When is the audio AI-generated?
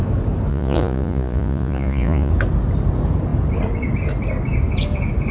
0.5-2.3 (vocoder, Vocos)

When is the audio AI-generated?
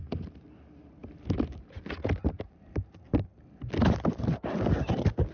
none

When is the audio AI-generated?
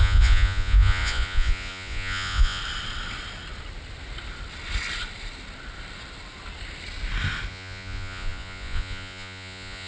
0.0-2.6 (vocoder, Vocos); 7.5-9.9